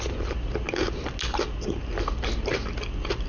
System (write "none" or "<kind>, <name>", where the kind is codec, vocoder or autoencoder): none